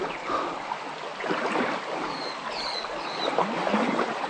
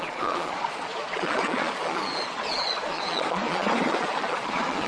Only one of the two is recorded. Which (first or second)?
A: first